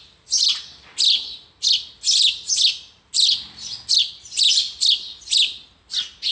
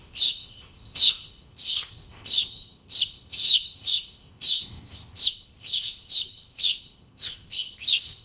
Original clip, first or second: first